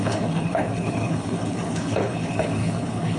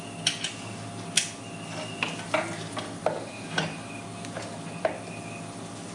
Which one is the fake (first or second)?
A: first